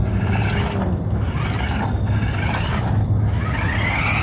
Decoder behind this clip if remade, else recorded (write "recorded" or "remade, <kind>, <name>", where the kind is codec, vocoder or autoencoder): recorded